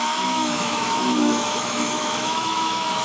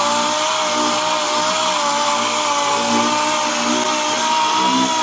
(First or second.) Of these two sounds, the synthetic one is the first